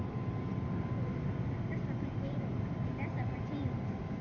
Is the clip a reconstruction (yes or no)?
yes